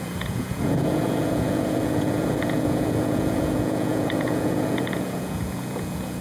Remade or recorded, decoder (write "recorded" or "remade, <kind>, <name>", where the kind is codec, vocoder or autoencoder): remade, vocoder, Vocos